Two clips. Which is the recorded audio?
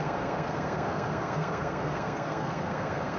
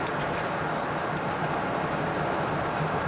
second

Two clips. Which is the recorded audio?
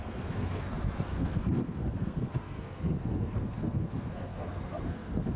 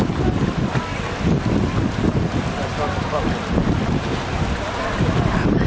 second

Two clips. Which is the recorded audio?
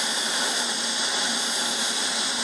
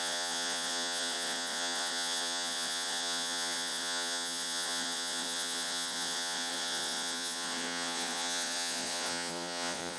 first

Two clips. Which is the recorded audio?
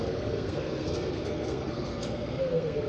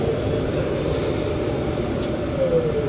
second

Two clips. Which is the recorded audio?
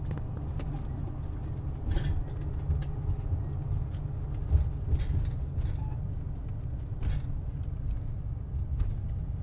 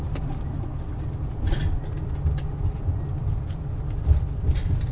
first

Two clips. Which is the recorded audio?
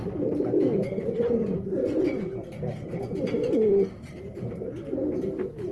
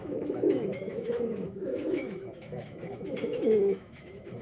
first